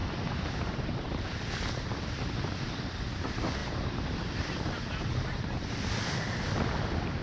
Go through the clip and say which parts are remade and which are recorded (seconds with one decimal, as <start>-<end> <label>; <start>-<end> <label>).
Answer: 0.0-1.5 remade; 1.5-3.6 recorded; 3.6-5.7 remade; 5.7-7.2 recorded